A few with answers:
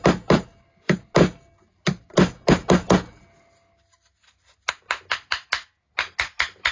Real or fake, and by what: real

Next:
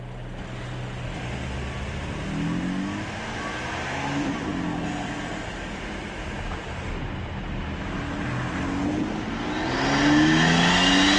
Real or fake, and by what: real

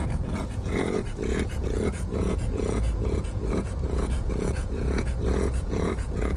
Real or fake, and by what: fake, vocoder, Vocos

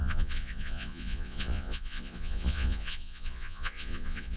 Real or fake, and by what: fake, vocoder, Vocos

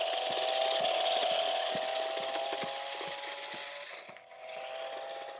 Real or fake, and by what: real